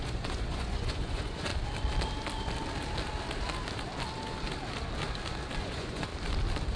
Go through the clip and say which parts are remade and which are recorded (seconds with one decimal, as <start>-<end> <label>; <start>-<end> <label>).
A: 0.0-1.5 remade; 1.5-5.6 recorded; 5.6-6.1 remade; 6.1-6.8 recorded